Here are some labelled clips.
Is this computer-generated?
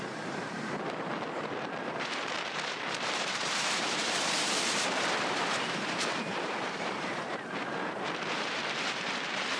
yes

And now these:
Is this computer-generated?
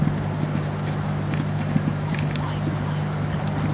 no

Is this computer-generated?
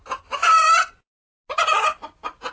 no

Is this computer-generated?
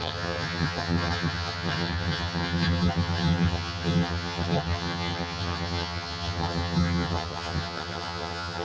yes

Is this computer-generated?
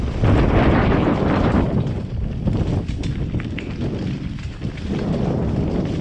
no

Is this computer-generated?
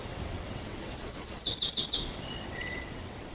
yes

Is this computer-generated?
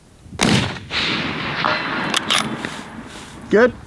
no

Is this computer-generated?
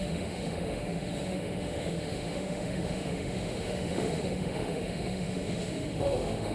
yes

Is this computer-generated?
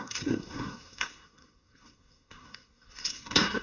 yes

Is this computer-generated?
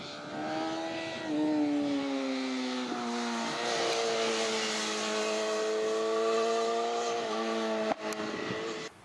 no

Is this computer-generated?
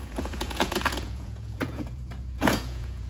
yes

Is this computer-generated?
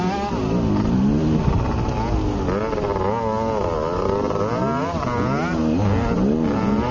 no